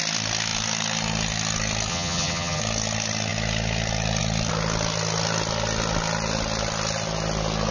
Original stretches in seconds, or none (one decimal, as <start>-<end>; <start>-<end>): 0.0-1.9; 2.6-7.7

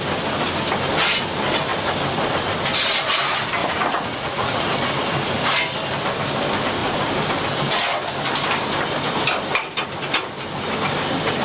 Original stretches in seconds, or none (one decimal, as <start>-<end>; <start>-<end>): 0.0-3.6; 4.7-11.4

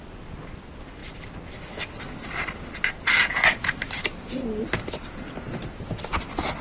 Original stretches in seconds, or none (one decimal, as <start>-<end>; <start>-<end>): 0.0-6.6

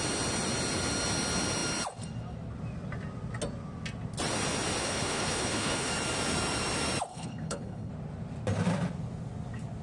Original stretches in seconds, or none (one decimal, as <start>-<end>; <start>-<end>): 0.0-4.8; 5.9-7.1; 7.9-9.8

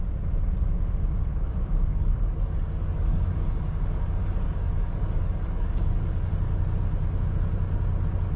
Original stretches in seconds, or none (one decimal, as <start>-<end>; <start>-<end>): 0.0-1.3; 6.3-8.4